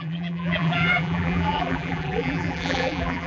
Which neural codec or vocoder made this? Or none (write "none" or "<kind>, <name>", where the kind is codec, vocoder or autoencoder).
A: vocoder, BigVGAN v2